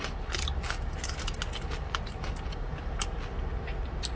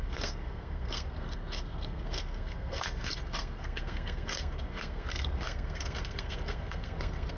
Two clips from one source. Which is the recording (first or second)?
first